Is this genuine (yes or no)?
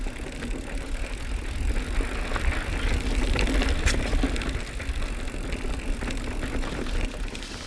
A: yes